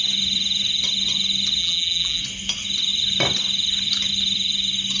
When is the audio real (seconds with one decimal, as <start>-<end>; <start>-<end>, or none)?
0.0-1.6; 2.2-5.0